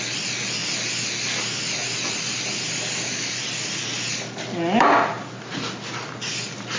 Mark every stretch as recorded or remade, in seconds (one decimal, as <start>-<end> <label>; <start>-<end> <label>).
0.0-6.8 recorded